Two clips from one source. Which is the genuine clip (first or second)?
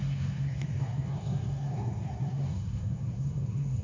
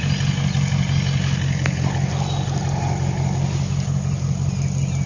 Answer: second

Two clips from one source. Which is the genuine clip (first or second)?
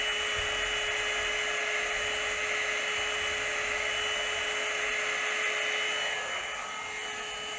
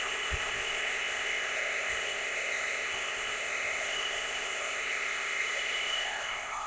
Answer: first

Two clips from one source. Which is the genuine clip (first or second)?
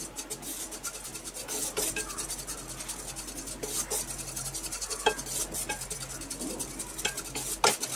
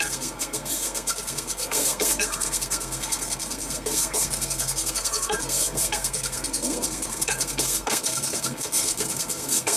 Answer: first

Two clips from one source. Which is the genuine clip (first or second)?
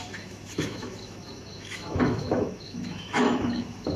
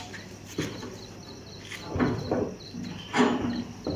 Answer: second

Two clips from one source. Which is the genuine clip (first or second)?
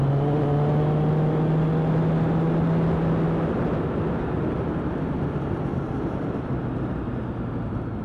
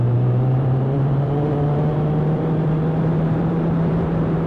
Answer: first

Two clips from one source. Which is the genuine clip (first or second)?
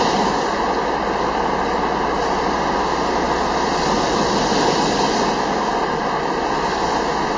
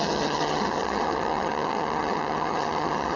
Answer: first